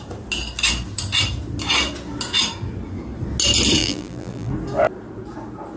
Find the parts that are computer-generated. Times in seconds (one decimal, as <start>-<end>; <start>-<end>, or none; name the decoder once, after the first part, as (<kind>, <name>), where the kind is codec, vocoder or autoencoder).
3.8-4.5 (vocoder, BigVGAN v2)